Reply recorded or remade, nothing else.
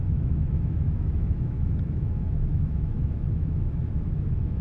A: remade